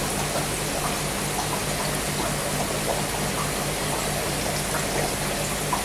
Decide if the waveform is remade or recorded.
recorded